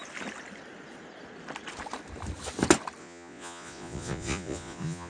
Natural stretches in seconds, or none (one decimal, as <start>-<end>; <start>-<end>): 0.0-3.0